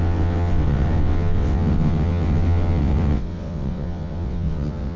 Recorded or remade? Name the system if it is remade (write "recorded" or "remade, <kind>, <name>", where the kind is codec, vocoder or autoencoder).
remade, vocoder, WaveNeXt